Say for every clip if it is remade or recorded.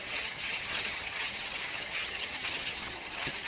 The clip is remade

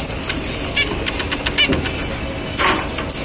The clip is recorded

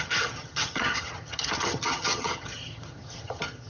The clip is remade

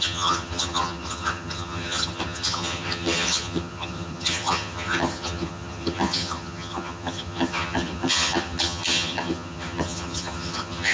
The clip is remade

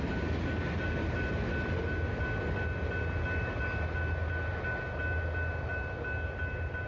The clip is recorded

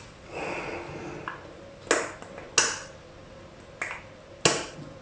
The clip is recorded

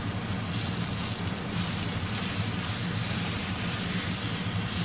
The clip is recorded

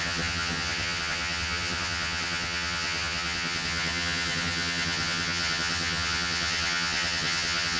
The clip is remade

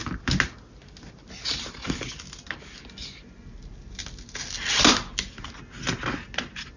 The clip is recorded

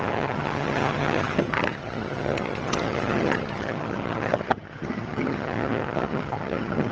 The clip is remade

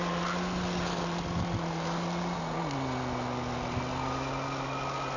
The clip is recorded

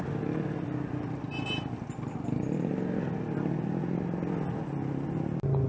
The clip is recorded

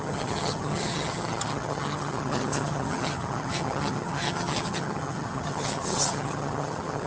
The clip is remade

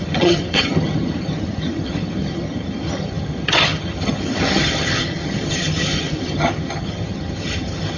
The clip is remade